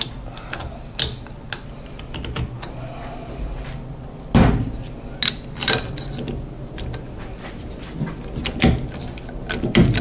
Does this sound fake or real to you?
real